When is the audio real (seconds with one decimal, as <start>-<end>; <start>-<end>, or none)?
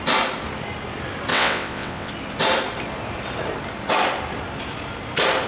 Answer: 0.0-1.3; 2.1-5.5